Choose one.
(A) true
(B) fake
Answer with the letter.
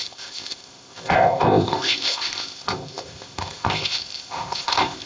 B